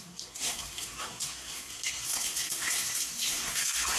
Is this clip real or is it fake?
fake